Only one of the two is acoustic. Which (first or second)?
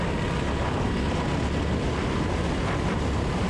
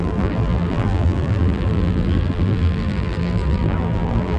first